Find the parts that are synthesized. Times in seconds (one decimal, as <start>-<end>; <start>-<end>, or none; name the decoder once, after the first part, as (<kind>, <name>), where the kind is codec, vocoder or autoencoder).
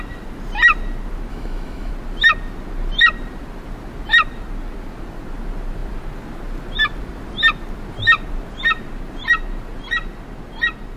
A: 1.3-1.9 (autoencoder, DAC-VAE)